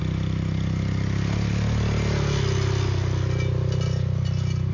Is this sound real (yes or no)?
yes